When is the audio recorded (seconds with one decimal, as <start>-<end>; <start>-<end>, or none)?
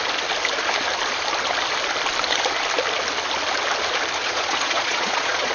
0.0-4.2